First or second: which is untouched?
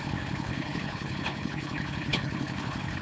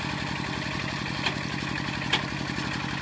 second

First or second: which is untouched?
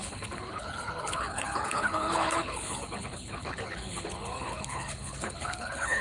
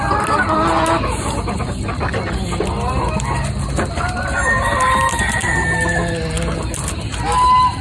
second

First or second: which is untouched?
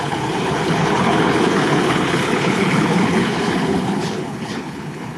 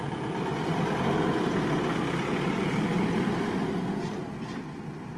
second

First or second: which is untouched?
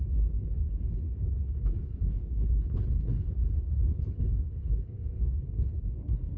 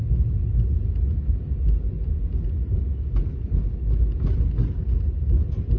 second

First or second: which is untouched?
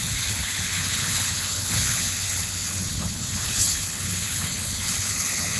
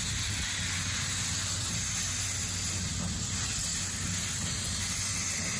second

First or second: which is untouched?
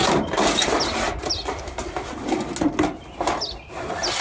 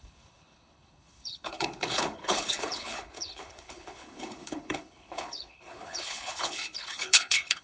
first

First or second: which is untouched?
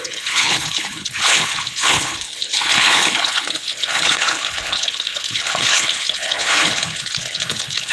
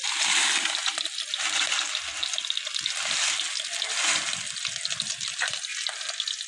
second